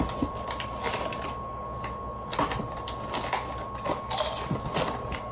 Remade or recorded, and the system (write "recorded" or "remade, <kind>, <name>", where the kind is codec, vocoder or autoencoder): recorded